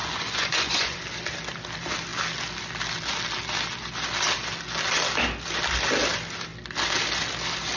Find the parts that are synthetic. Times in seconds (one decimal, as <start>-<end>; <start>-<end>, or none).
0.0-1.0